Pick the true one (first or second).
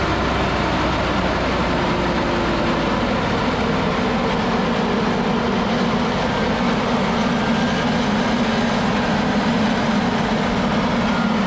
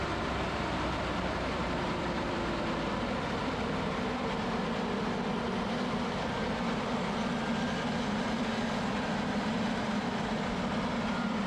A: first